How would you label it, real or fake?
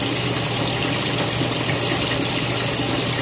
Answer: real